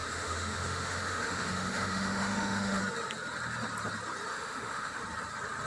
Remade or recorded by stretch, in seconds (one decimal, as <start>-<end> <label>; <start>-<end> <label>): 0.0-2.8 remade; 2.8-4.3 recorded; 4.3-5.0 remade; 5.0-5.7 recorded